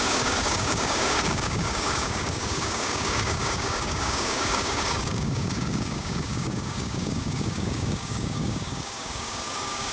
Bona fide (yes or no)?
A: no